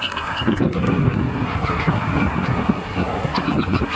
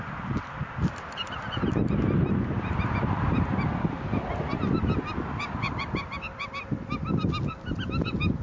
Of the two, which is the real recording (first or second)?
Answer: second